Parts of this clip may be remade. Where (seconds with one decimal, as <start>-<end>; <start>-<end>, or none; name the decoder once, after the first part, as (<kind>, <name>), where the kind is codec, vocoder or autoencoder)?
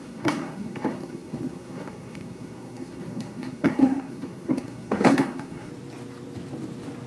0.0-5.7 (codec, SNAC)